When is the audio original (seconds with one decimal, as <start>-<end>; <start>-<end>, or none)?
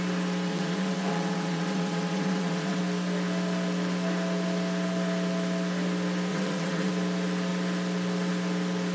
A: 0.0-0.5; 2.8-6.3; 6.9-8.9